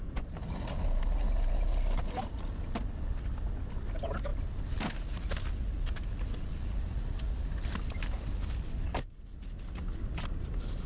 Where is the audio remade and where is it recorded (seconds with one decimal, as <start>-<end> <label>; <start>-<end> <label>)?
0.0-10.9 recorded